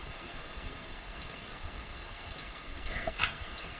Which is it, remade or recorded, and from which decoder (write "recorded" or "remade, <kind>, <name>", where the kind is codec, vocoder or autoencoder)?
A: remade, codec, SNAC